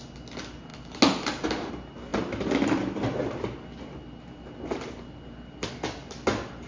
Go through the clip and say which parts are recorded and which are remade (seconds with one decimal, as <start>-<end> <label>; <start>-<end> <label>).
0.0-2.1 recorded; 2.1-5.7 remade; 5.7-6.7 recorded

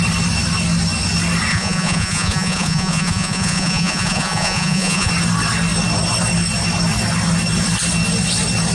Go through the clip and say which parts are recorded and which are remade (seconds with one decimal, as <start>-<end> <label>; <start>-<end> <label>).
0.0-1.5 recorded; 1.5-5.1 remade; 5.1-8.7 recorded

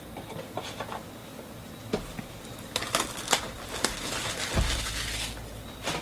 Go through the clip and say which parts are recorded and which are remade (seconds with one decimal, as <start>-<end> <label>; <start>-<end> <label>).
0.0-6.0 recorded

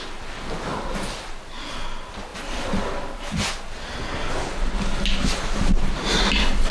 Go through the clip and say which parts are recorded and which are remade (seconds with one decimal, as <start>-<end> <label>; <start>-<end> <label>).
0.0-0.7 recorded; 0.7-1.3 remade; 1.3-2.3 recorded; 2.3-3.5 remade; 3.5-6.7 recorded